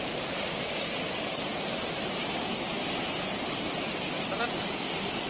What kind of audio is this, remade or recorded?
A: recorded